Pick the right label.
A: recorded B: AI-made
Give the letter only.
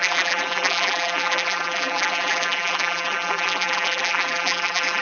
B